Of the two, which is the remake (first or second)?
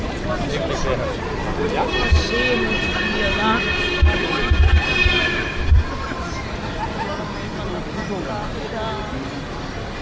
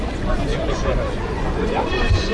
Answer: second